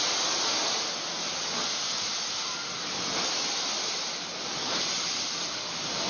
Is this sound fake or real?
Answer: real